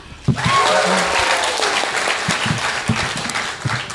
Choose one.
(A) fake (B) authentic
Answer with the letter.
B